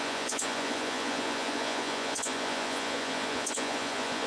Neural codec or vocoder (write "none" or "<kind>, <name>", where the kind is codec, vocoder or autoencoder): vocoder, Vocos